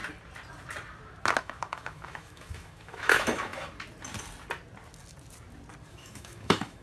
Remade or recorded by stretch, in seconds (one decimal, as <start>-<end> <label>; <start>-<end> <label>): 0.0-1.4 recorded; 1.4-3.5 remade; 3.5-5.9 recorded; 5.9-6.8 remade